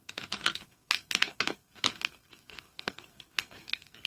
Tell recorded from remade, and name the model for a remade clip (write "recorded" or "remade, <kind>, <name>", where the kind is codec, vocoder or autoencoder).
remade, codec, SNAC